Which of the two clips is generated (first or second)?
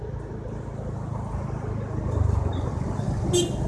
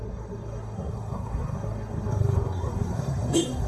second